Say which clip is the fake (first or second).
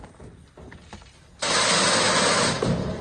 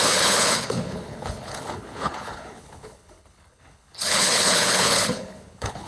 second